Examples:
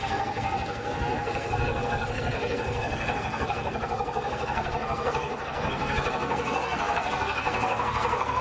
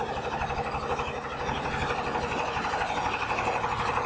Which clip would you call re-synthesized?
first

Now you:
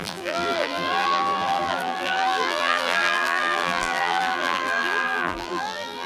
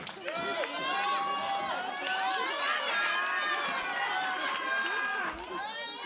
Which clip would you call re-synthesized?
first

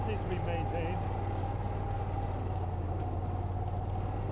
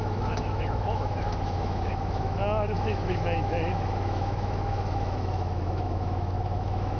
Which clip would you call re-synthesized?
second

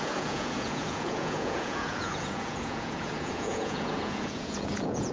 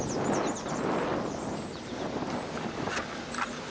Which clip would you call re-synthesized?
first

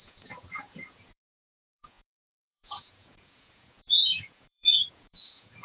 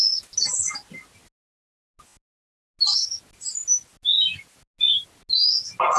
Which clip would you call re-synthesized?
first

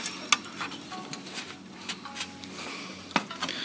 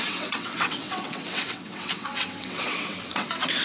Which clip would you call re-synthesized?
second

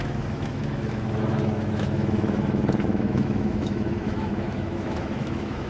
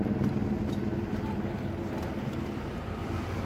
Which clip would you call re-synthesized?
first